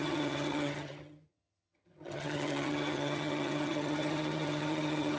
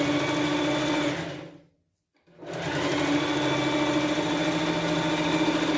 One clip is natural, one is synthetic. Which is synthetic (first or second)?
first